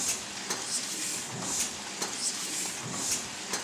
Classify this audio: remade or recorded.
recorded